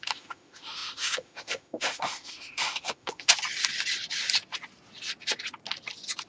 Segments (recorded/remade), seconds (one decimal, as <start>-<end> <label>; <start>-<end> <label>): 0.0-3.3 remade; 3.3-6.3 recorded

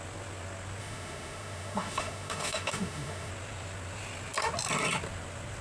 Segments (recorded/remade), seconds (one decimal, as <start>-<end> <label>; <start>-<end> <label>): 0.0-0.8 recorded; 0.8-3.3 remade; 3.3-5.6 recorded

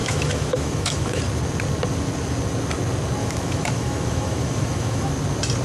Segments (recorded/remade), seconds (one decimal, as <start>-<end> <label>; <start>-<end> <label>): 0.0-1.2 remade; 1.2-3.2 recorded; 3.2-5.1 remade; 5.1-5.6 recorded

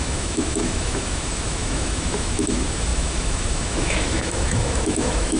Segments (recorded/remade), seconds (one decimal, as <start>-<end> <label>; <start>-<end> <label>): 0.0-5.4 remade

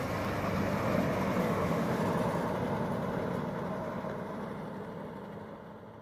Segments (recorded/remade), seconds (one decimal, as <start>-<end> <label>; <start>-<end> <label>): 0.0-1.4 recorded; 1.4-2.0 remade; 2.0-6.0 recorded

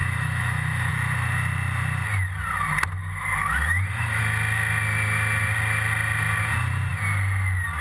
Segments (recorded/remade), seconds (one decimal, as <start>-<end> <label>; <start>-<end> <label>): 0.0-0.9 remade; 0.9-3.0 recorded; 3.0-4.2 remade; 4.2-7.8 recorded

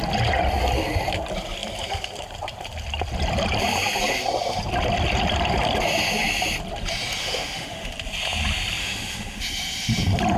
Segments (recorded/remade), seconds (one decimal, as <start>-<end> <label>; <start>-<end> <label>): 0.0-7.2 recorded; 7.2-7.9 remade; 7.9-8.8 recorded; 8.8-9.4 remade; 9.4-10.4 recorded